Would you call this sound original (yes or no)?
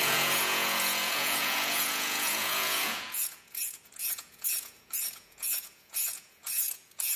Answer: no